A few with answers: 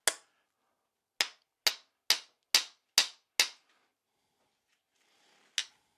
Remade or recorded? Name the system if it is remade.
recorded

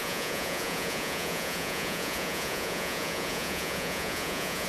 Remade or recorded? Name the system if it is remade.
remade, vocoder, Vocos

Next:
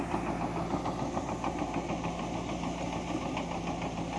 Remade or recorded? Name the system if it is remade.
recorded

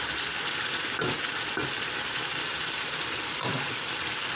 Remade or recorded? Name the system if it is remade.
recorded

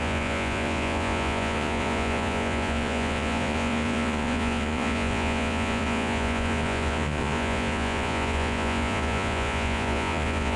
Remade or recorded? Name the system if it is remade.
remade, vocoder, Vocos